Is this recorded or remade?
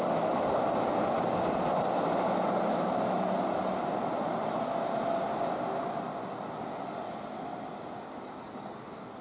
recorded